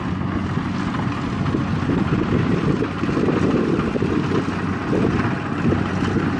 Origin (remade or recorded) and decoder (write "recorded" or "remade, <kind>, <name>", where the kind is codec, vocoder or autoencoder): recorded